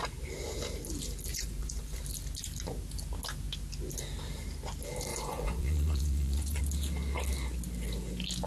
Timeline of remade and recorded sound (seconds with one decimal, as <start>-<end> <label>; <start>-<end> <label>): 0.0-1.3 recorded; 1.3-2.0 remade; 2.0-5.1 recorded; 5.1-6.6 remade; 6.6-8.5 recorded